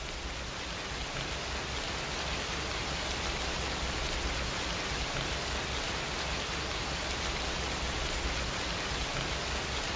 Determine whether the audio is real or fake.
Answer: real